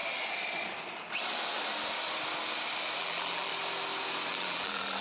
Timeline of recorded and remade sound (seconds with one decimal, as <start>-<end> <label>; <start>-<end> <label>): 0.0-3.0 recorded; 3.0-3.5 remade; 3.5-4.3 recorded; 4.3-5.0 remade

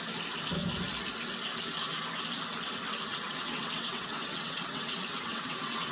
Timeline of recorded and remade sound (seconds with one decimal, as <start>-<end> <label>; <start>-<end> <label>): 0.0-3.1 recorded; 3.1-5.9 remade

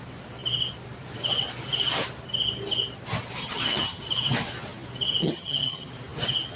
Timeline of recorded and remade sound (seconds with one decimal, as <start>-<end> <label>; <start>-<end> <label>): 0.0-3.4 recorded; 3.4-4.0 remade; 4.0-5.2 recorded; 5.2-5.9 remade; 5.9-6.6 recorded